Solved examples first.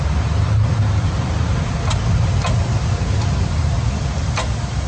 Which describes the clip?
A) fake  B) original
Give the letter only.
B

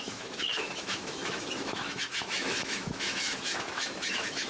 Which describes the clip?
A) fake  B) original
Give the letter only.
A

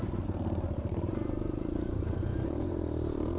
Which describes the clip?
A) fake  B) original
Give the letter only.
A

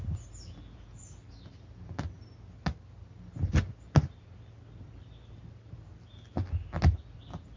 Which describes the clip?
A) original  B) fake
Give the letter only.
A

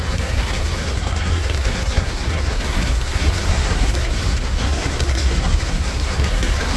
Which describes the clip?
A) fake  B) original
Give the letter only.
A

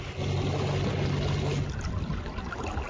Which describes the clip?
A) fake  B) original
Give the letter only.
B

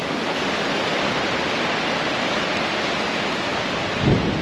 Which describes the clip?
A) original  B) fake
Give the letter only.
B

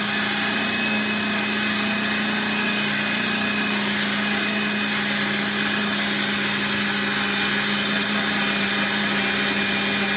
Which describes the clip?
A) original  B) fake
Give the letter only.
A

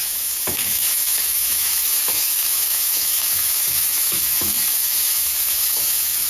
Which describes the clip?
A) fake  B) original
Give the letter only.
A